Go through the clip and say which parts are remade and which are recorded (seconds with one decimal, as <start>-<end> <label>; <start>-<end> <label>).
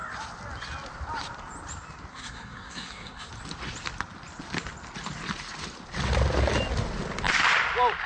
0.0-2.1 recorded; 2.1-3.3 remade; 3.3-8.1 recorded